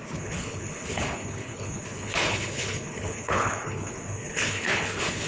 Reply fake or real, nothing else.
fake